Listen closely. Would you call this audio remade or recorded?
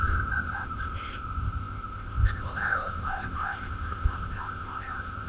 remade